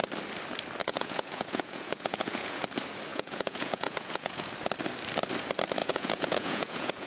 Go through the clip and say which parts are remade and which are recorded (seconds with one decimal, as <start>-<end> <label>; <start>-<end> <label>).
0.0-0.8 recorded; 0.8-2.6 remade; 2.6-3.1 recorded; 3.1-4.5 remade; 4.5-5.8 recorded; 5.8-7.1 remade